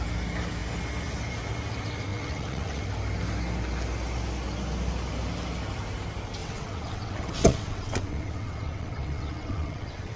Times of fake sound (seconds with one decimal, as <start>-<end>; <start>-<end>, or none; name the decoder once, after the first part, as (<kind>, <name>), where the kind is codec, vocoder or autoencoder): 2.1-2.8 (vocoder, WaveNeXt); 6.4-10.2